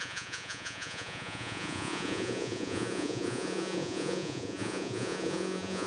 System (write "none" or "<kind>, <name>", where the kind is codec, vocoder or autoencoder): vocoder, Vocos